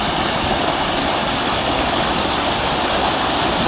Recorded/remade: recorded